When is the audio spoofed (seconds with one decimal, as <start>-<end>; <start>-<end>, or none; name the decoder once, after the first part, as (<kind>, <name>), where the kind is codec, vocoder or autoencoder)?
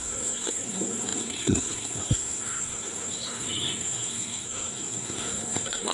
0.0-5.9 (codec, SNAC)